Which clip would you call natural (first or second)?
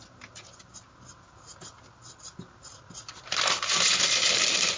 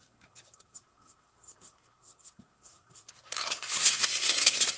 first